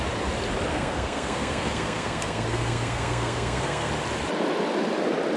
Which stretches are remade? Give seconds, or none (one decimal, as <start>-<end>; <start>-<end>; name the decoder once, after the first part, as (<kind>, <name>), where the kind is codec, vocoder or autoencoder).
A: 0.7-3.9 (codec, SNAC)